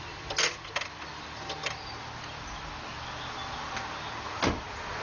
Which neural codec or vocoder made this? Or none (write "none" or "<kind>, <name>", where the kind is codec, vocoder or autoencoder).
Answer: none